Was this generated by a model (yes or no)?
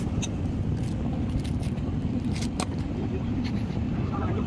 no